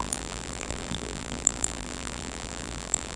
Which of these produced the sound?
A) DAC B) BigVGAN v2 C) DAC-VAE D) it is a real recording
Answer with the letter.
B